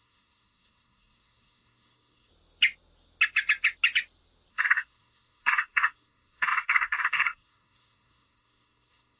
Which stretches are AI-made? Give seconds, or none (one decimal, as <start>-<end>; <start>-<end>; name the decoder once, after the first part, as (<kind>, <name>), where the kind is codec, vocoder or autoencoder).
0.0-2.3 (codec, SNAC); 4.5-9.2